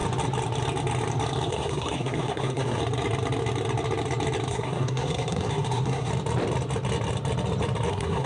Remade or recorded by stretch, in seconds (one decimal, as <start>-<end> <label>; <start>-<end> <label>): 0.0-1.5 recorded; 1.5-2.8 remade; 2.8-4.5 recorded; 4.5-6.1 remade; 6.1-7.9 recorded; 7.9-8.3 remade